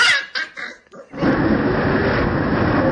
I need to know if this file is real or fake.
real